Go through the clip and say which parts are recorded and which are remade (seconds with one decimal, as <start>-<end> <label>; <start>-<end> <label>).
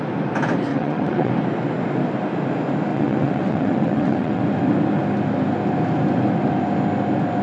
0.0-0.7 recorded; 0.7-1.3 remade; 1.3-2.9 recorded; 2.9-4.4 remade; 4.4-7.4 recorded